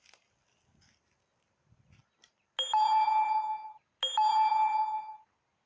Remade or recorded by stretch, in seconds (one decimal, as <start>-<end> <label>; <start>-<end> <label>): 0.0-5.7 recorded